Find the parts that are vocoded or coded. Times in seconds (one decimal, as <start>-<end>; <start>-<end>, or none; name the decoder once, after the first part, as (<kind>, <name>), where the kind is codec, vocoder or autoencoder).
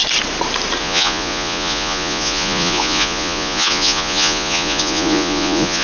0.8-5.8 (vocoder, Vocos)